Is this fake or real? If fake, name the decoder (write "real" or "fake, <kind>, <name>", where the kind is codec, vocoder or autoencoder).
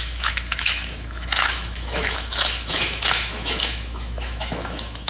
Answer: fake, autoencoder, DAC-VAE